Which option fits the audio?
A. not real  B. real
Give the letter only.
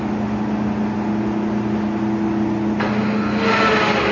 B